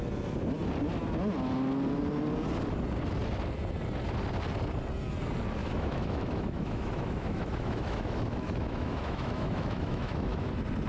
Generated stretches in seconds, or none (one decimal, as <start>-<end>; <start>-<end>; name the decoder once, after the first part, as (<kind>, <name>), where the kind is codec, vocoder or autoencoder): 5.6-10.5 (autoencoder, DAC-VAE)